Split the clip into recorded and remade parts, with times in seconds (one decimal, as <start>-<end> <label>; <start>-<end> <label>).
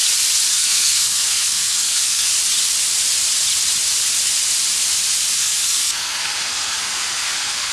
0.0-0.5 recorded; 0.5-2.3 remade; 2.3-5.4 recorded; 5.4-7.7 remade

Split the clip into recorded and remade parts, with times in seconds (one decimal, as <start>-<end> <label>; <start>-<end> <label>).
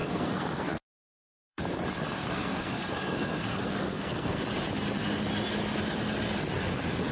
0.0-1.6 remade; 1.6-2.2 recorded; 2.2-4.4 remade; 4.4-7.1 recorded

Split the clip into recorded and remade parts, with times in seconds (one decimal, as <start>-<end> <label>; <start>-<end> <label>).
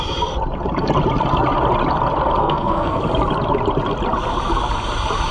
0.0-2.4 recorded; 2.4-3.0 remade; 3.0-5.3 recorded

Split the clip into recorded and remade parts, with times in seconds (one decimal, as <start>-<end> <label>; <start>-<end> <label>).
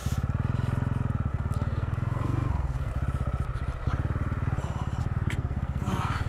0.0-1.3 recorded; 1.3-2.9 remade; 2.9-5.0 recorded; 5.0-6.3 remade